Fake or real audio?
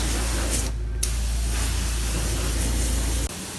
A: real